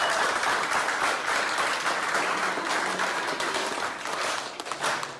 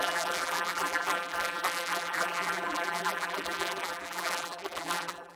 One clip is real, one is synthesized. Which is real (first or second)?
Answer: first